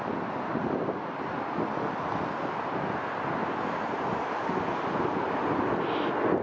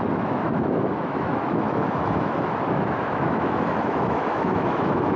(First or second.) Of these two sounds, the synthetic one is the second